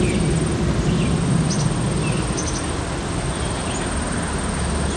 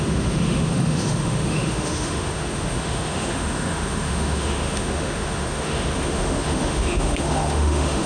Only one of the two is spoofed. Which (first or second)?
second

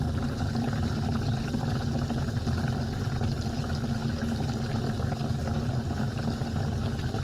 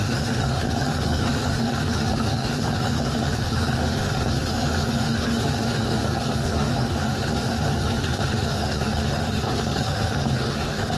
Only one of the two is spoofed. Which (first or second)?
second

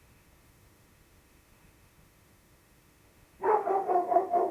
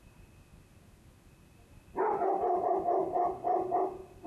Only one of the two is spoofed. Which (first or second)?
first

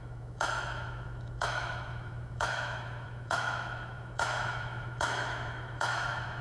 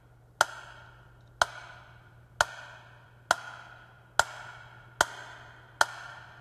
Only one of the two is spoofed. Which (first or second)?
first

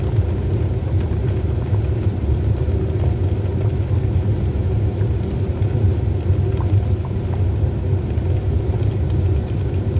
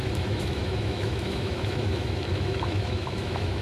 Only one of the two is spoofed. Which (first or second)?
second